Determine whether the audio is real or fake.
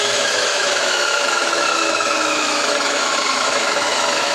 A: fake